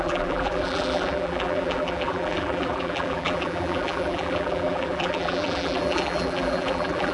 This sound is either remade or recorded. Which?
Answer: remade